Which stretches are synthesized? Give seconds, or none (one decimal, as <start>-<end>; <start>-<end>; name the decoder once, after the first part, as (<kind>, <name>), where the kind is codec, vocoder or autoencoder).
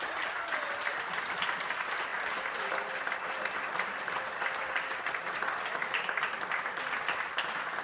none